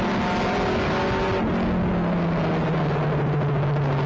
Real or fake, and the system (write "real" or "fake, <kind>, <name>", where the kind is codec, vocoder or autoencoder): real